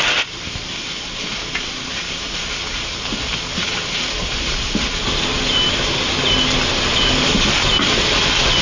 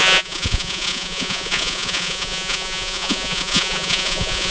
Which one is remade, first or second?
second